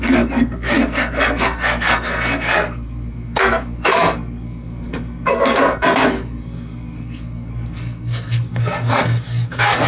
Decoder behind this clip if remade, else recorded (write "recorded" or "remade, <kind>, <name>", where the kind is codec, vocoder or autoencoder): remade, codec, SNAC